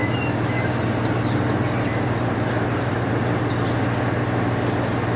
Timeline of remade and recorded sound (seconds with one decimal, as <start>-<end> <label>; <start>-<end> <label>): 0.0-3.1 remade; 3.1-5.2 recorded